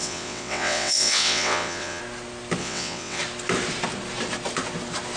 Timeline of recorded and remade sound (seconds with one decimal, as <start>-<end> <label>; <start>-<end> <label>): 0.0-2.0 remade; 2.0-2.6 recorded; 2.6-3.2 remade; 3.2-5.2 recorded